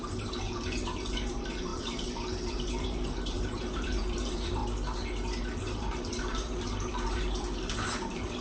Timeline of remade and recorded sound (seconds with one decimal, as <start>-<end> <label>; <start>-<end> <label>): 0.0-4.6 remade; 4.6-5.6 recorded; 5.6-8.4 remade